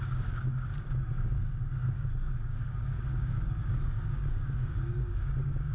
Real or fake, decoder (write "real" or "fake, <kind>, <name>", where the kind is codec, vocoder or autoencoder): fake, codec, DAC